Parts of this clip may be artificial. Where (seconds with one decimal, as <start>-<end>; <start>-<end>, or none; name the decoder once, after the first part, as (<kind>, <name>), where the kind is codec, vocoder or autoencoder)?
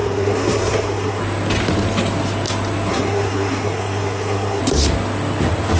0.0-1.2 (codec, SNAC); 2.9-4.6